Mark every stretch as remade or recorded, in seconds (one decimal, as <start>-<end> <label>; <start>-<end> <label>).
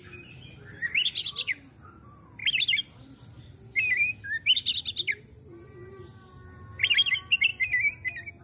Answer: 0.0-8.4 recorded